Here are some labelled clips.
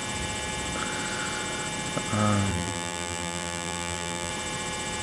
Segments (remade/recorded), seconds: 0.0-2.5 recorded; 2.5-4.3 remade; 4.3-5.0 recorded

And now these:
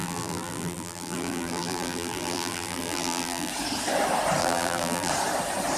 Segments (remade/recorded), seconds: 0.0-3.5 remade; 3.5-4.4 recorded; 4.4-5.1 remade; 5.1-5.8 recorded

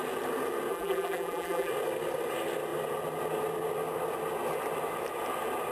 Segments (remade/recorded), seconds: 0.0-0.7 recorded; 0.7-1.7 remade; 1.7-5.7 recorded

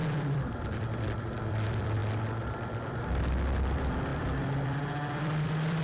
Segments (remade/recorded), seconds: 0.0-2.0 remade; 2.0-2.9 recorded; 2.9-5.8 remade

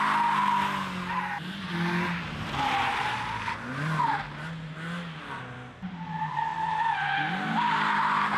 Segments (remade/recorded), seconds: 0.0-8.4 recorded

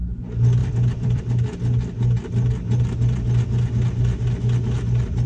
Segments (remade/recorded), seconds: 0.0-0.6 recorded; 0.6-1.2 remade; 1.2-5.3 recorded